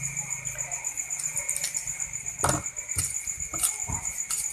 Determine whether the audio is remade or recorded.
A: recorded